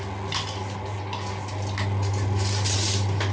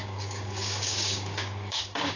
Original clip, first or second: first